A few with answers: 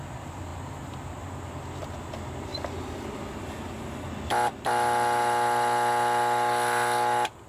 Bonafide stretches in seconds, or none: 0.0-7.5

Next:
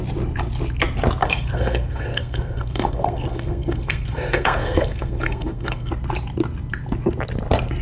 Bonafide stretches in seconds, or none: 0.0-1.2; 5.9-7.8

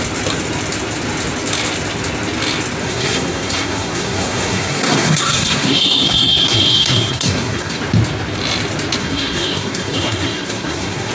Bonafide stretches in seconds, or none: 0.0-2.8; 7.8-9.0

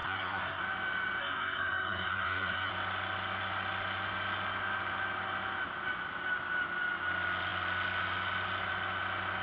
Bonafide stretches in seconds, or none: 0.6-1.2; 2.7-9.4

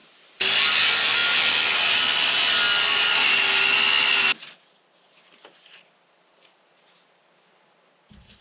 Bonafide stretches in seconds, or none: 0.0-8.4